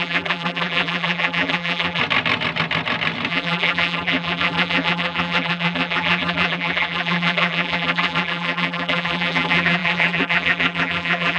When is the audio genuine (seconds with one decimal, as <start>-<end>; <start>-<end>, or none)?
2.0-3.3

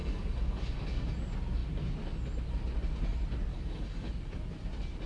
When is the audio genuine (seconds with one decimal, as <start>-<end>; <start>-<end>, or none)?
1.1-3.5; 4.1-5.1